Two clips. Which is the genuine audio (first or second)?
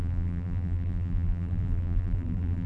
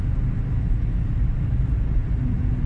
second